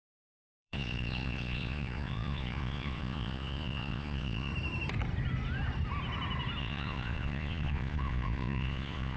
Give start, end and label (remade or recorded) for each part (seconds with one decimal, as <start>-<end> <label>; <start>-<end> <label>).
0.0-4.5 remade; 4.5-6.6 recorded; 6.6-9.2 remade